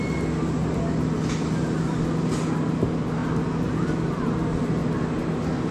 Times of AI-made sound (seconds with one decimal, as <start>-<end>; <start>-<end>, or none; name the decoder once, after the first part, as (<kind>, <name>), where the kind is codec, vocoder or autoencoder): none